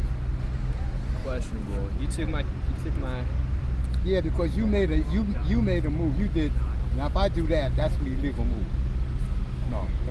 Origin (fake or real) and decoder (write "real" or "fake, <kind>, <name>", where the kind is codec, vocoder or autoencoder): real